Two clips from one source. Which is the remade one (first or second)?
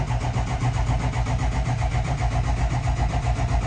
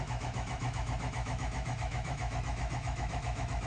second